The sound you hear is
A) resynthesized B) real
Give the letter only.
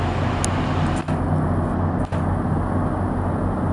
B